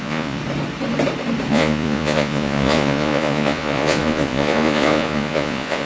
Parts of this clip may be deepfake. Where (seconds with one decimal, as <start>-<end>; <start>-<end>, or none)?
0.0-0.4; 1.5-5.9

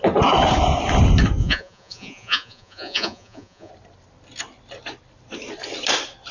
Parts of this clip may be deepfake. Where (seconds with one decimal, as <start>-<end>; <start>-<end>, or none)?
1.4-3.7

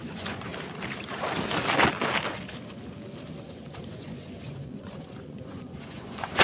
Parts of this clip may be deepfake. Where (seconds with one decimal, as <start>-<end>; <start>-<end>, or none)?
0.0-0.5; 3.4-6.4

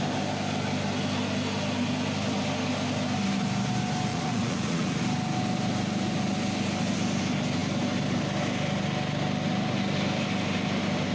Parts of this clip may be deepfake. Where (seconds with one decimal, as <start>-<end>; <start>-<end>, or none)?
4.1-5.0

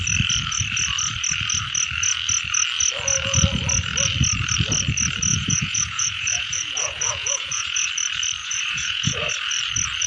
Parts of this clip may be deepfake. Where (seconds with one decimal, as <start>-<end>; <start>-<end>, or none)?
5.3-7.9; 8.4-9.3

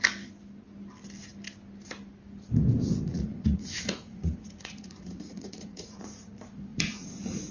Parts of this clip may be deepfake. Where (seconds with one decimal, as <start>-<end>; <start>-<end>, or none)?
3.1-6.3; 6.7-7.5

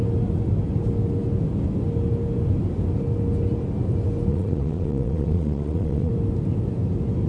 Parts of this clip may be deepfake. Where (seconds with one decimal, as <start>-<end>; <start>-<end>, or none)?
4.3-6.1